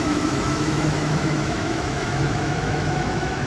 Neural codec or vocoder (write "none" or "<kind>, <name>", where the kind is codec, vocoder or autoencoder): autoencoder, DAC-VAE